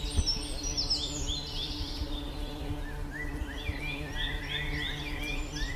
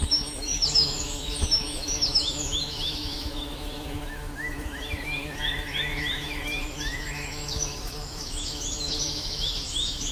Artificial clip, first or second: second